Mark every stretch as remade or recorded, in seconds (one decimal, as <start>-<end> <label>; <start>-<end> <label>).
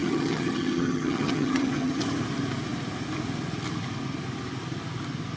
0.0-2.0 remade; 2.0-5.4 recorded